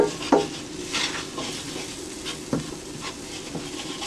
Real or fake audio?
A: real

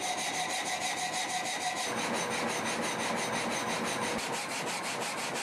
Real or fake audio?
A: real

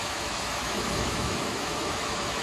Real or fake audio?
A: fake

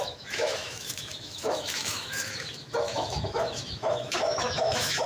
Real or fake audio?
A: fake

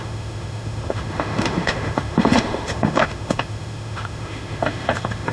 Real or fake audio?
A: fake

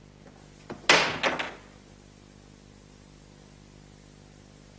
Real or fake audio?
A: real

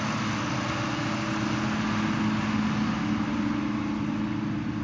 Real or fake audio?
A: real